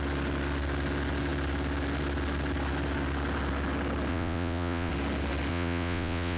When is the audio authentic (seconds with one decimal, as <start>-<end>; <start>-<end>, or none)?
0.0-4.1; 4.9-5.5